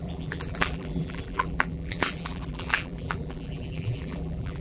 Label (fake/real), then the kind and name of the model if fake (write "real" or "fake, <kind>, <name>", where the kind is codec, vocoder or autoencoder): fake, vocoder, BigVGAN v2